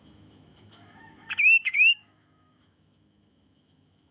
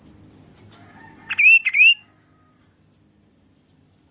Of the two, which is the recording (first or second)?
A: second